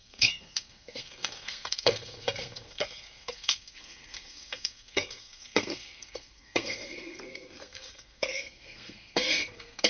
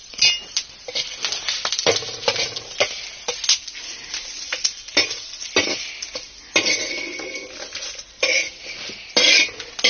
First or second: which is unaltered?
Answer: second